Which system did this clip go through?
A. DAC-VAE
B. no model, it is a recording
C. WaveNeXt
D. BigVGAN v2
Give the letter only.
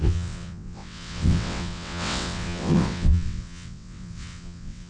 C